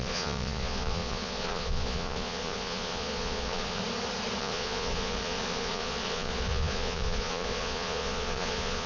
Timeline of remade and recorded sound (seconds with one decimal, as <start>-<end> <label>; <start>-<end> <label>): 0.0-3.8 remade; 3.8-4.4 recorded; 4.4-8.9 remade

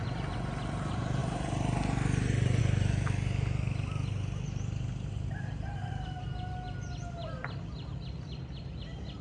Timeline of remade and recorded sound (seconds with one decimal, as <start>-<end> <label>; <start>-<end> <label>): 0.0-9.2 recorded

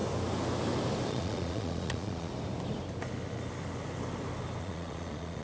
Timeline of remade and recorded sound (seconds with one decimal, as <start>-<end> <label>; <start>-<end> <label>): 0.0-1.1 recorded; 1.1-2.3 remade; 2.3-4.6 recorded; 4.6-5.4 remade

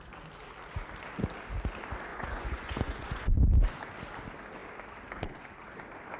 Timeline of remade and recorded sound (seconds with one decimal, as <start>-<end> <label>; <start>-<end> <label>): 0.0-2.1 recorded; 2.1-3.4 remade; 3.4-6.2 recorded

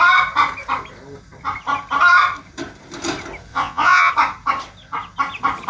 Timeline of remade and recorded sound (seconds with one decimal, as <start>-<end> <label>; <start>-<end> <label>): 0.0-3.5 recorded; 3.5-4.1 remade; 4.1-5.7 recorded

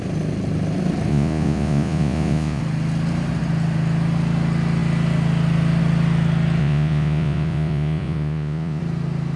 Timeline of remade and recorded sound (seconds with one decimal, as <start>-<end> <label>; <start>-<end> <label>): 0.0-1.1 recorded; 1.1-2.6 remade; 2.6-6.6 recorded; 6.6-8.8 remade; 8.8-9.4 recorded

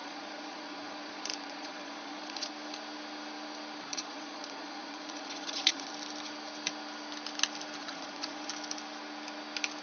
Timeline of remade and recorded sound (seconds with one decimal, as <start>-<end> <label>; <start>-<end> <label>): 0.0-2.5 remade; 2.5-3.9 recorded; 3.9-5.9 remade; 5.9-7.8 recorded; 7.8-8.5 remade; 8.5-9.8 recorded